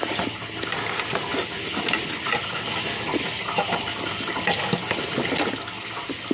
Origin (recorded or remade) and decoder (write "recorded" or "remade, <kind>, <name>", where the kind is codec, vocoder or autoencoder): recorded